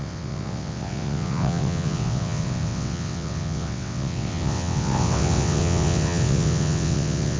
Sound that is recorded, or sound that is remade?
remade